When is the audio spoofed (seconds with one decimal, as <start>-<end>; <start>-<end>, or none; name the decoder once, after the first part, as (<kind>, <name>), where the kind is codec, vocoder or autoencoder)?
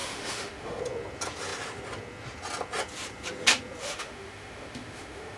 0.0-0.8 (autoencoder, DAC-VAE); 3.8-5.4